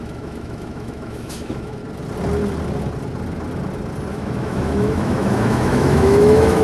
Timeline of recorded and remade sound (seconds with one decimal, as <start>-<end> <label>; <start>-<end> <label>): 0.0-1.8 remade; 1.8-4.1 recorded; 4.1-6.6 remade